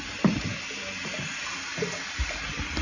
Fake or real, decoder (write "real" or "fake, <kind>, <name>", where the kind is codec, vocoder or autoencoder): real